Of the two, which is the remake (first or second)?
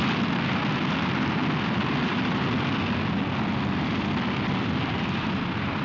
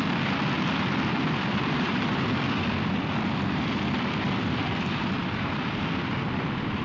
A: second